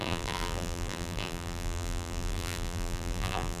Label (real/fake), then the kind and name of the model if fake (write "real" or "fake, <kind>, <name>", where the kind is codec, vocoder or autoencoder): fake, vocoder, BigVGAN v2